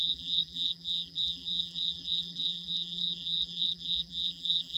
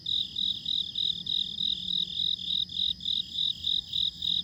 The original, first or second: second